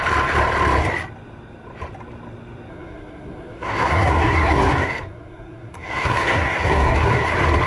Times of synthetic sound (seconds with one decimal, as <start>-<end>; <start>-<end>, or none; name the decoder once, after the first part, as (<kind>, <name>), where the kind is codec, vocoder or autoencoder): 2.7-7.3 (codec, SNAC)